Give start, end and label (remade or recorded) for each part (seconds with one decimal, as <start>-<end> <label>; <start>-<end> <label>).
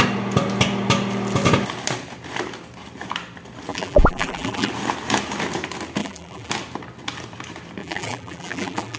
0.0-3.7 recorded; 3.7-4.7 remade; 4.7-6.0 recorded; 6.0-6.5 remade; 6.5-7.8 recorded; 7.8-9.0 remade